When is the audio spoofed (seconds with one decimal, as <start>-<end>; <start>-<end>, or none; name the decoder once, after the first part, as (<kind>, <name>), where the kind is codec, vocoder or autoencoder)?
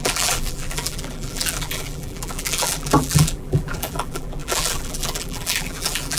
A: 0.0-6.2 (vocoder, BigVGAN v2)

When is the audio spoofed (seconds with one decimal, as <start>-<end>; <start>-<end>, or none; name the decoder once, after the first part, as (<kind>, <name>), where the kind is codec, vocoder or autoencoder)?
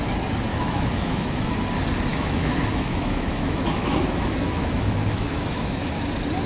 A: 0.5-1.5 (autoencoder, DAC-VAE); 2.1-5.9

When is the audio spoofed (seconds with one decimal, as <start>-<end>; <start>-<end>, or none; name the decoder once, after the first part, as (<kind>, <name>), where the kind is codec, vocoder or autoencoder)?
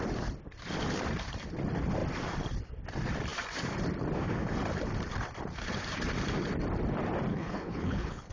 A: 7.3-8.3 (codec, HILCodec)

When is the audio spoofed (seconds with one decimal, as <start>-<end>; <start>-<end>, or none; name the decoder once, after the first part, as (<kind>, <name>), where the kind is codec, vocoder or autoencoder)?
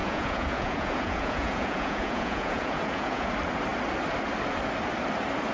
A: 0.0-3.3 (vocoder, Vocos)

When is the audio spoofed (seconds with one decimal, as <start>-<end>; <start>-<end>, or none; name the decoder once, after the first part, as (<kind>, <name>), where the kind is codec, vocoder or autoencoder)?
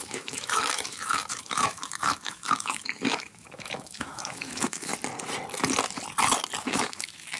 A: 0.0-4.9 (autoencoder, DAC-VAE); 6.6-7.4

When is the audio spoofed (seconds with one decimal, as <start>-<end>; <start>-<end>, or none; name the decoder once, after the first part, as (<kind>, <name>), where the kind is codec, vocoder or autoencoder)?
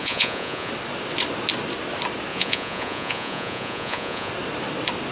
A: 0.0-0.7 (vocoder, Vocos); 2.3-4.3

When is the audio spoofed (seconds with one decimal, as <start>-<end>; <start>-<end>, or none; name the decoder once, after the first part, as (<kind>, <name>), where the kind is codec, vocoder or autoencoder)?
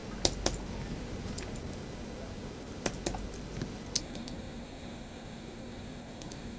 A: 4.0-6.6 (codec, SNAC)